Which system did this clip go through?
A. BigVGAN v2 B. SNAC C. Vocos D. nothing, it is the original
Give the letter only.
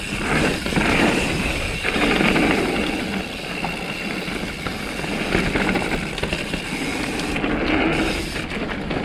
D